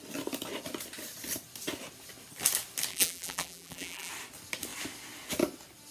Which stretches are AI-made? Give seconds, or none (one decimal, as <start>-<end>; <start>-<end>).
2.9-4.1